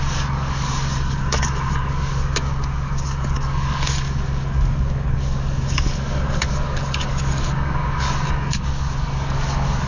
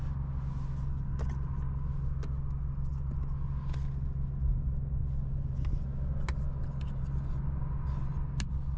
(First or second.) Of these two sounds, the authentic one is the second